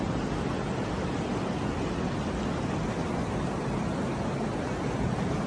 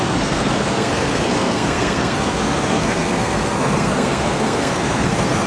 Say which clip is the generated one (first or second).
second